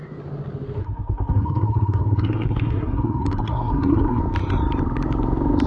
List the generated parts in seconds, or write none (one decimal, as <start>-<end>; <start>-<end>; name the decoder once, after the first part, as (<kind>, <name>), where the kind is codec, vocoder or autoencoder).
0.8-4.2 (codec, SNAC)